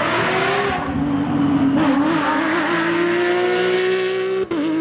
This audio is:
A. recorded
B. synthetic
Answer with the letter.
A